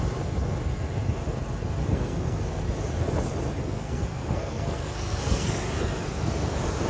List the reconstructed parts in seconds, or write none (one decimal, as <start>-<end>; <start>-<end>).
1.8-2.6; 3.6-5.5